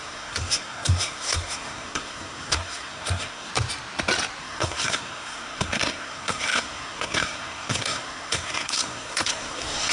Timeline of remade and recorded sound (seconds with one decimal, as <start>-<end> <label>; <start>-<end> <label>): 0.0-3.5 remade; 3.5-4.4 recorded; 4.4-9.9 remade